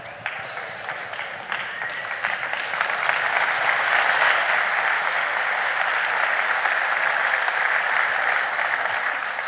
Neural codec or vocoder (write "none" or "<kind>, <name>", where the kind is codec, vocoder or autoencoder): none